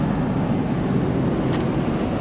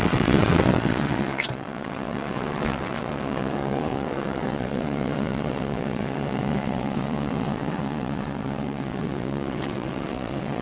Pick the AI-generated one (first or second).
second